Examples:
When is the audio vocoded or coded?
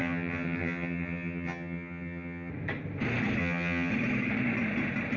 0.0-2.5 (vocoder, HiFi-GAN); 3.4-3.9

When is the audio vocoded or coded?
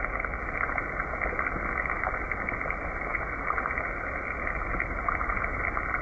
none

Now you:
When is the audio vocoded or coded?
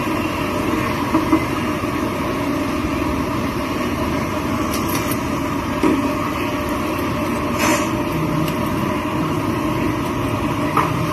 none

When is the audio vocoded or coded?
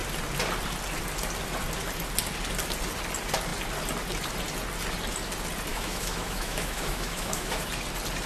5.7-7.7 (autoencoder, DAC-VAE)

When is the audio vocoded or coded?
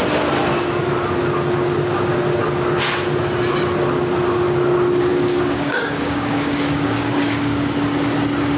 5.1-7.7 (codec, DAC)